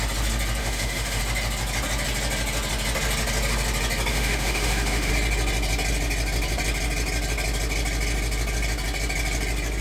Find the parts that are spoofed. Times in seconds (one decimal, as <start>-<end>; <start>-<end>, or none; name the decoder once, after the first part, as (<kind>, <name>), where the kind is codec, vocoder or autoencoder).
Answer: 0.6-1.2 (autoencoder, DAC-VAE); 4.1-5.1